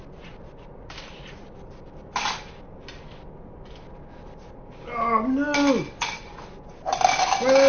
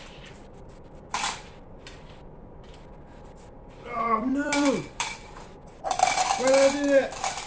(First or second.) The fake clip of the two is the second